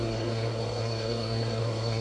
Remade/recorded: remade